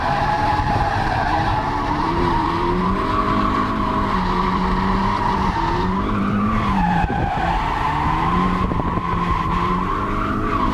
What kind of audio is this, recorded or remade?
remade